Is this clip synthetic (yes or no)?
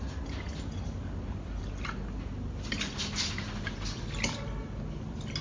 no